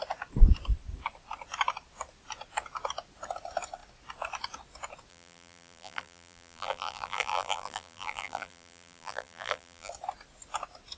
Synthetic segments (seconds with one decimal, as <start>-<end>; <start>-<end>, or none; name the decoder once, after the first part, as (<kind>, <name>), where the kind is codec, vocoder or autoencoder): 5.1-9.9 (vocoder, BigVGAN v2)